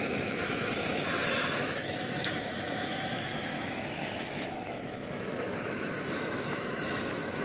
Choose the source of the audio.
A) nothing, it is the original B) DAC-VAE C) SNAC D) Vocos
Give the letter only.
B